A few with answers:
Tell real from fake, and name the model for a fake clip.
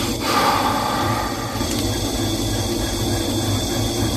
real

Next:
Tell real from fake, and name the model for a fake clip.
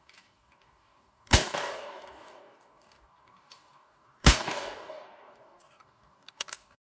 fake, codec, DAC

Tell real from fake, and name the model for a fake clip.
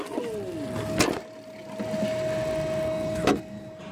real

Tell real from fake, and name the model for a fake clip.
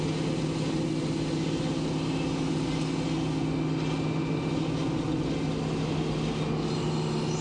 real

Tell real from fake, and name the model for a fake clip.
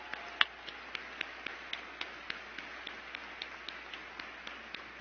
real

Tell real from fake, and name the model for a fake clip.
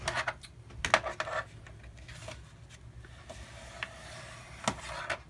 real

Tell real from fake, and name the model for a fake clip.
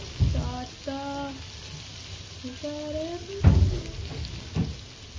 real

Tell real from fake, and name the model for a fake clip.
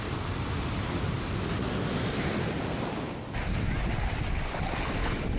real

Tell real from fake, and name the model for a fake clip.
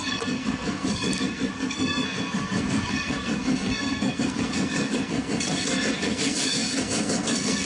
fake, codec, SNAC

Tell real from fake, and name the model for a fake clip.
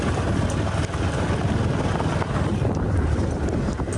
real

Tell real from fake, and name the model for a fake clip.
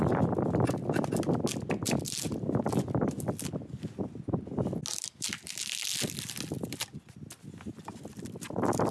real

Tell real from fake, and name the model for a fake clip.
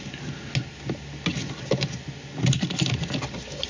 real